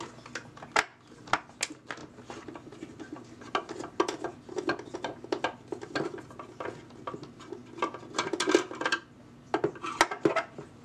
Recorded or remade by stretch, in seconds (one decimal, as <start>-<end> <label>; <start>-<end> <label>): 0.0-10.8 recorded